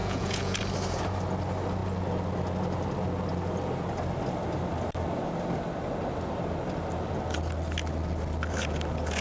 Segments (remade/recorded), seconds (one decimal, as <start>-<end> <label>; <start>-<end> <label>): 0.0-0.6 remade; 0.6-9.2 recorded